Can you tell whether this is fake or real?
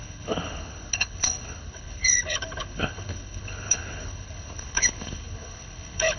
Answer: fake